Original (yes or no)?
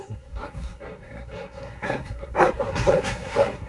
no